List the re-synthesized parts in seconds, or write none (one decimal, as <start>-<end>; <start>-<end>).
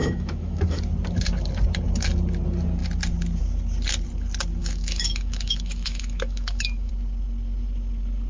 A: 0.0-0.8; 4.6-6.9